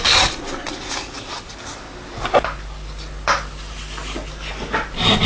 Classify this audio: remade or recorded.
recorded